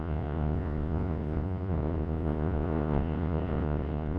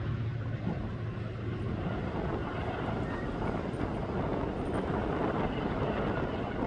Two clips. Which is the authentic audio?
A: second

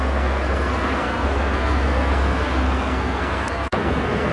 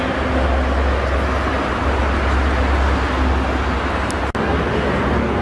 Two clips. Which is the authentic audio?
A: second